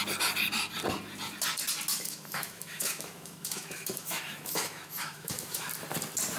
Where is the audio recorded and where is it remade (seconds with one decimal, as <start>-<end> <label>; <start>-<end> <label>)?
0.0-1.9 recorded; 1.9-5.7 remade; 5.7-6.4 recorded